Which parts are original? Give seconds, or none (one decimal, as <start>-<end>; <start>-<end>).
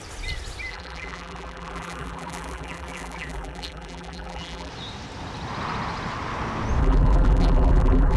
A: 0.0-0.7; 4.7-6.8